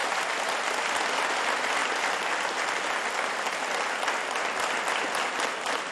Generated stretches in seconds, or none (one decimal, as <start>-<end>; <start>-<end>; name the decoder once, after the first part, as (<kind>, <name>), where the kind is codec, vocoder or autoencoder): none